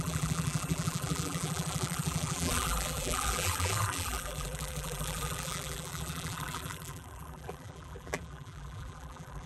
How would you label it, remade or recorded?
remade